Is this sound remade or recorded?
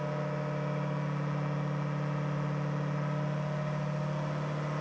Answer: recorded